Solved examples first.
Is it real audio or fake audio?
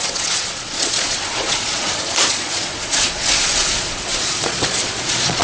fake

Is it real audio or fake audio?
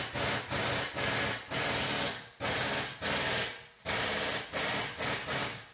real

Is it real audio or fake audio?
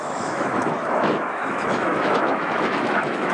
fake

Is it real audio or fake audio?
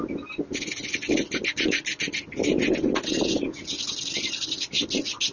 real